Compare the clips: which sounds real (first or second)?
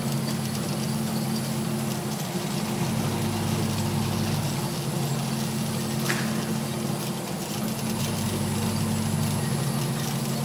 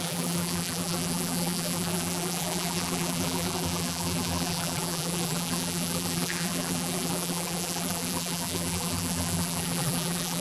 first